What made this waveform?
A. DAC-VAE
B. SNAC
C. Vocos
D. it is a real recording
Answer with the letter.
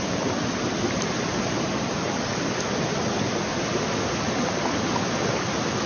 D